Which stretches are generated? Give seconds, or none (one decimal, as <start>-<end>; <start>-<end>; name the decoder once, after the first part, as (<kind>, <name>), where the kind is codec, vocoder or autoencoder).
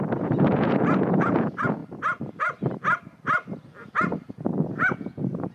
0.0-1.8 (vocoder, Vocos); 4.8-5.5